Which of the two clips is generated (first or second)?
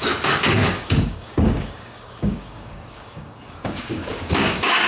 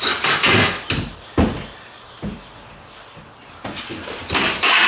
first